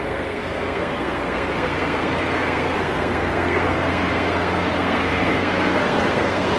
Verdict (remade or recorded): remade